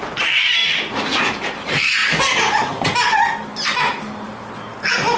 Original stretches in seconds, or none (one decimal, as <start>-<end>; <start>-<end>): 0.0-5.2